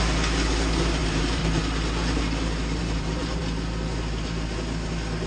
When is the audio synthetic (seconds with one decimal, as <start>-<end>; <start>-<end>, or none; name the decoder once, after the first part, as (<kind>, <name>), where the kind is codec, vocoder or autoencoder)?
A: 1.0-1.6 (vocoder, BigVGAN v2); 2.8-3.4